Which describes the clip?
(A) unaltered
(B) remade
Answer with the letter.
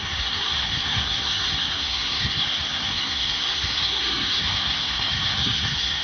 B